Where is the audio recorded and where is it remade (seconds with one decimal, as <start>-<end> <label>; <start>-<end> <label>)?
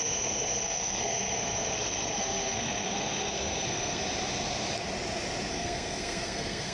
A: 0.0-4.0 remade; 4.0-5.5 recorded; 5.5-6.7 remade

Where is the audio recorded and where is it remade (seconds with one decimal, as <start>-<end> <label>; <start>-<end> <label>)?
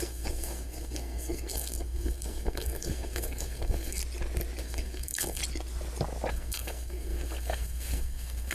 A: 0.0-4.0 remade; 4.0-4.6 recorded; 4.6-5.4 remade; 5.4-6.3 recorded; 6.3-8.5 remade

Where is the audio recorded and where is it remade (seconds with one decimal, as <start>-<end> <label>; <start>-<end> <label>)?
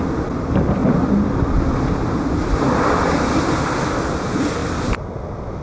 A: 0.0-0.8 remade; 0.8-2.3 recorded; 2.3-4.6 remade; 4.6-5.6 recorded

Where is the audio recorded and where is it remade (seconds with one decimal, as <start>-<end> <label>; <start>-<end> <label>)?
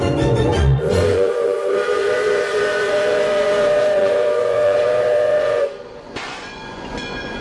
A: 0.0-7.4 remade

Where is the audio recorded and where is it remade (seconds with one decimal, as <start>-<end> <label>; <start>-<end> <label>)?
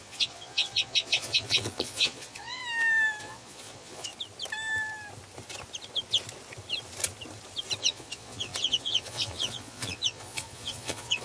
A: 0.0-2.6 remade; 2.6-3.2 recorded; 3.2-4.1 remade; 4.1-7.8 recorded; 7.8-11.2 remade